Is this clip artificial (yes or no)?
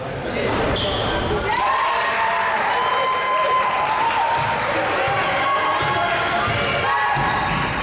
no